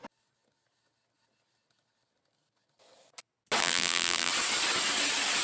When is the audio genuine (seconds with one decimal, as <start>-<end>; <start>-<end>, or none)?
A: 0.0-3.6; 4.3-5.4